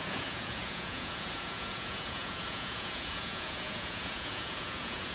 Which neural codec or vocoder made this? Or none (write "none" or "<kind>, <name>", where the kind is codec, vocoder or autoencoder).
vocoder, Vocos